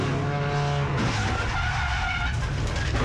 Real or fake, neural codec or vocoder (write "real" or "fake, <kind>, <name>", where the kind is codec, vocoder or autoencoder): real